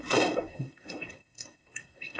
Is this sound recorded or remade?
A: remade